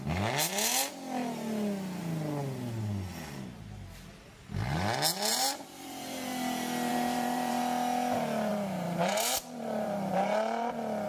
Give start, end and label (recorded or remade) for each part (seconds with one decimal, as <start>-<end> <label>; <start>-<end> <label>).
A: 0.0-5.3 recorded; 5.3-6.3 remade; 6.3-6.9 recorded; 6.9-7.6 remade; 7.6-8.5 recorded; 8.5-10.7 remade; 10.7-11.1 recorded